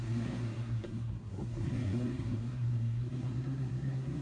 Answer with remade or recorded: remade